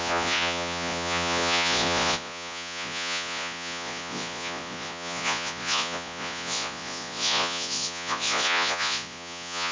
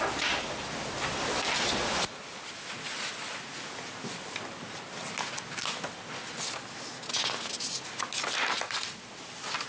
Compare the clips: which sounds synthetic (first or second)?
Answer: first